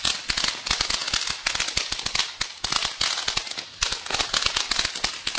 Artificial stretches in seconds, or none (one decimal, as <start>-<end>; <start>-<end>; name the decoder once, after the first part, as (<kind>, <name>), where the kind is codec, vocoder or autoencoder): none